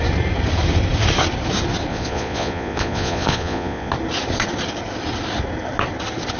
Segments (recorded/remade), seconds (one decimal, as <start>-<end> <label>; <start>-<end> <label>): 0.0-1.9 recorded; 1.9-3.9 remade; 3.9-6.4 recorded